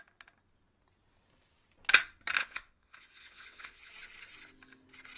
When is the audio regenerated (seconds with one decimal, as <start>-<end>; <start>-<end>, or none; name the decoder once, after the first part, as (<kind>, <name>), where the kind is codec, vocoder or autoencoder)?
2.4-3.9 (vocoder, Vocos)